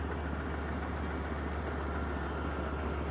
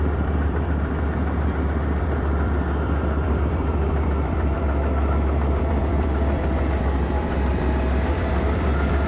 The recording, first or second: first